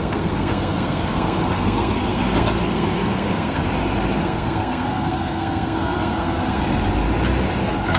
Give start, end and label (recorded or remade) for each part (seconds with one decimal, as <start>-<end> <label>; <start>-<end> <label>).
0.0-3.6 remade; 3.6-4.2 recorded; 4.2-6.6 remade; 6.6-7.6 recorded; 7.6-8.0 remade